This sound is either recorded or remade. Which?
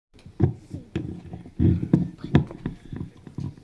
recorded